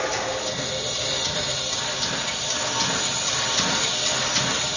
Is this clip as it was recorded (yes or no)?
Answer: yes